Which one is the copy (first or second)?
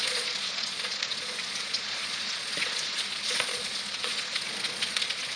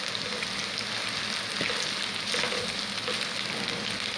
first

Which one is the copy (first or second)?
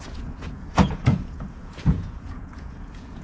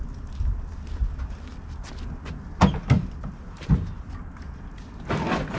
first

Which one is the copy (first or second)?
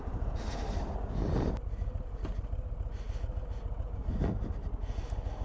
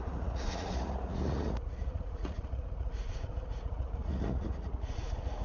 second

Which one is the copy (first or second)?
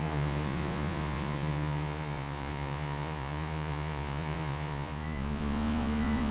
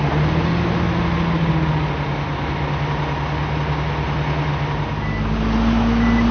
first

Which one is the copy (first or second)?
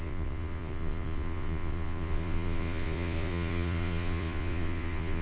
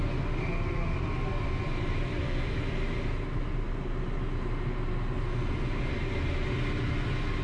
first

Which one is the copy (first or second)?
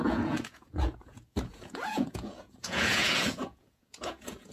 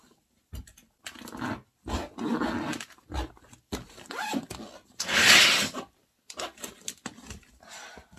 first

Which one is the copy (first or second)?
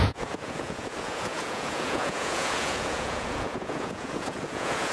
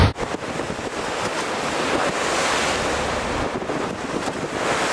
first